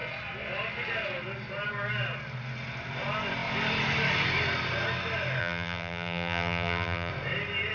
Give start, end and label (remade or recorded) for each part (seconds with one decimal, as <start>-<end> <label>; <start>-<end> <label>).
0.0-5.4 recorded; 5.4-7.1 remade; 7.1-7.7 recorded